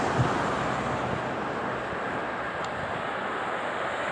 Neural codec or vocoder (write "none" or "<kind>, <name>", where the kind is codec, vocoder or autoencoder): none